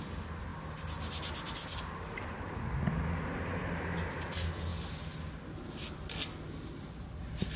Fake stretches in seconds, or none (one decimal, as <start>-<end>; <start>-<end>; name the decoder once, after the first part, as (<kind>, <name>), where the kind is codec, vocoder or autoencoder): none